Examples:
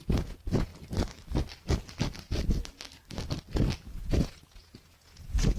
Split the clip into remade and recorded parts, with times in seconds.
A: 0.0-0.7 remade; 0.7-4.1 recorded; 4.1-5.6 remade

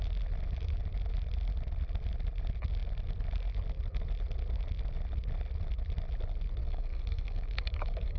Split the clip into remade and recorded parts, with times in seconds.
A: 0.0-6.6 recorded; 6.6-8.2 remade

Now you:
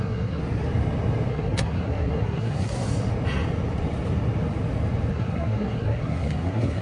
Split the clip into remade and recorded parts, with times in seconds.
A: 0.0-0.4 remade; 0.4-1.3 recorded; 1.3-2.9 remade; 2.9-5.1 recorded; 5.1-6.8 remade